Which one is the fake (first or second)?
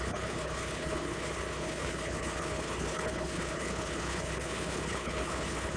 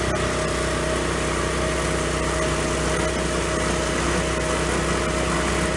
first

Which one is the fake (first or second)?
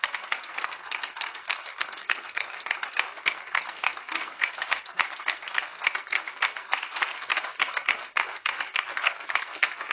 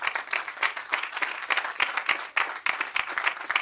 first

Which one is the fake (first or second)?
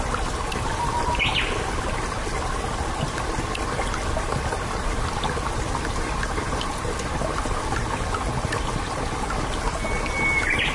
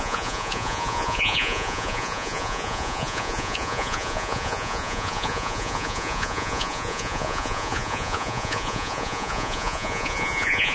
second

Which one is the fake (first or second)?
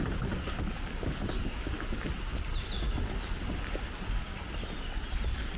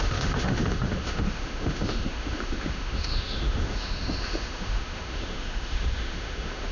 second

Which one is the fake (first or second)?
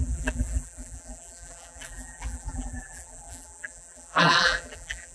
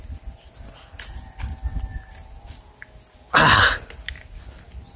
first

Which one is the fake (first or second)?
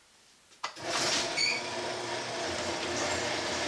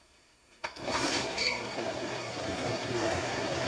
second